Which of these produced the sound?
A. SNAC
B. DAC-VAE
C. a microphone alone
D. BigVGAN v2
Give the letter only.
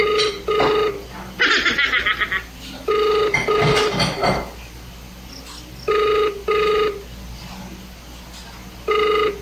C